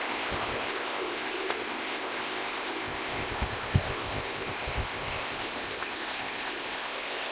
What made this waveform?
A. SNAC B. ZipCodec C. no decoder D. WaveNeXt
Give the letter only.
B